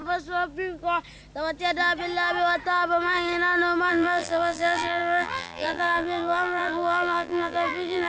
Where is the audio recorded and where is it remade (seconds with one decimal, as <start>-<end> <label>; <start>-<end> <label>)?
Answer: 0.0-3.9 recorded; 3.9-8.1 remade